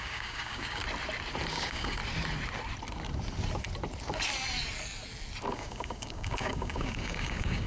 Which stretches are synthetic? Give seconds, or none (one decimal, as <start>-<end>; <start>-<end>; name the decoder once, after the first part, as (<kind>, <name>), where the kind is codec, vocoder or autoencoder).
0.0-0.8 (codec, DAC); 1.5-2.0; 5.5-7.7